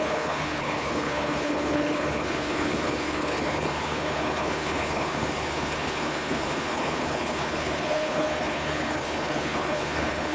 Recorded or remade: remade